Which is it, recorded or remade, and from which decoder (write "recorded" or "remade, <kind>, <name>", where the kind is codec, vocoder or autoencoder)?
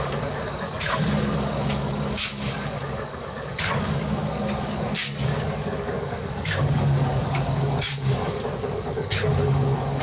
remade, codec, DAC